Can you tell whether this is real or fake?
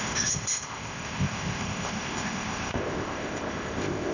fake